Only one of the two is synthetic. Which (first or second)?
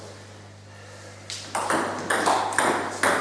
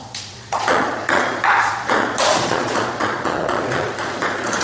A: second